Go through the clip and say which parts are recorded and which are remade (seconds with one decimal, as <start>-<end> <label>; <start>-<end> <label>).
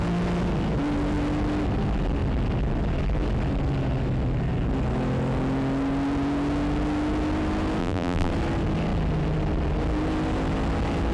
0.0-7.8 recorded; 7.8-8.3 remade; 8.3-11.1 recorded